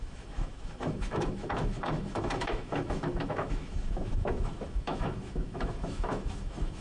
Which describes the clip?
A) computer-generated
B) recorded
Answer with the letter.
A